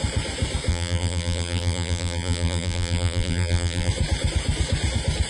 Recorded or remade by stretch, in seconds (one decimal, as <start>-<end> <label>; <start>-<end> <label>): 0.0-0.7 recorded; 0.7-3.9 remade; 3.9-5.3 recorded